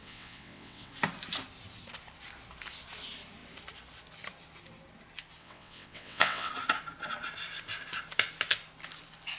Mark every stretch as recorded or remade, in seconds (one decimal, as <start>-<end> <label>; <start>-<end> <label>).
0.0-0.9 remade; 0.9-5.4 recorded; 5.4-6.5 remade; 6.5-9.4 recorded